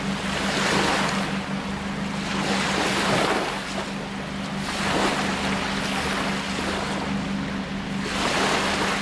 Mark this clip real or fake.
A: real